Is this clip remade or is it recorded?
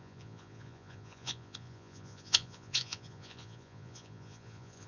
remade